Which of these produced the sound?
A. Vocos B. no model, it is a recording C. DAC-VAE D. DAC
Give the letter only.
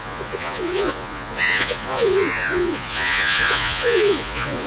A